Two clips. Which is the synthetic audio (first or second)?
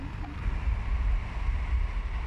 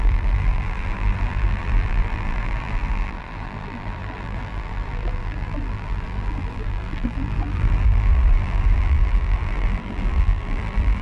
second